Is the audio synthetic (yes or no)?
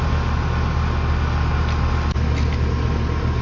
no